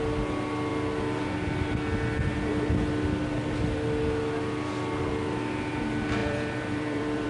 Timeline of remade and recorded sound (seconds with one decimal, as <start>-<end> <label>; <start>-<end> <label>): 0.0-6.2 recorded; 6.2-7.3 remade